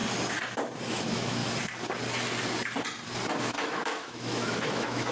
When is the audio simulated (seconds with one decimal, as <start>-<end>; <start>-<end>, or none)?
0.9-1.4; 3.4-5.1